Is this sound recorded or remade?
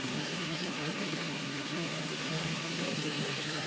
remade